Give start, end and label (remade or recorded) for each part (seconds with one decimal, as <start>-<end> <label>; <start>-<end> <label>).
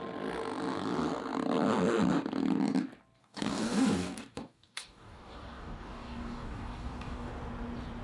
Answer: 0.0-3.2 recorded; 3.2-7.3 remade; 7.3-8.0 recorded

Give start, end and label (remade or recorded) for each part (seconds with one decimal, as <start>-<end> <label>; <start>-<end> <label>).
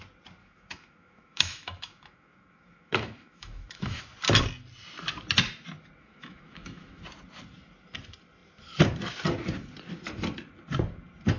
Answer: 0.0-0.4 recorded; 0.4-4.0 remade; 4.0-6.0 recorded; 6.0-7.0 remade; 7.0-11.4 recorded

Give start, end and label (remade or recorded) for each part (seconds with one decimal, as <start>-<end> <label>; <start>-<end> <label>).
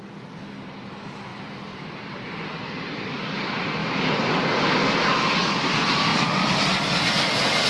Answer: 0.0-1.3 recorded; 1.3-3.4 remade; 3.4-7.7 recorded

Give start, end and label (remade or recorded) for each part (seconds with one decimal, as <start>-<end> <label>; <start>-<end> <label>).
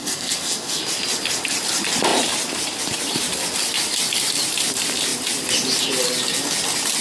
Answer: 0.0-0.8 remade; 0.8-7.0 recorded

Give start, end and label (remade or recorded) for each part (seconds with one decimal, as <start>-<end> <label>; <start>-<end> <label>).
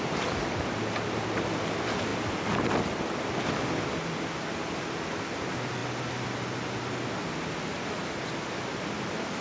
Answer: 0.0-9.4 recorded